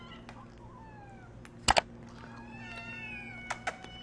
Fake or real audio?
real